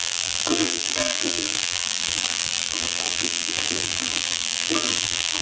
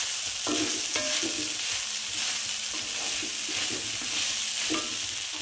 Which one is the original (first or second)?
second